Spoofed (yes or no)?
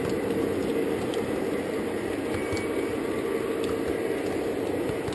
no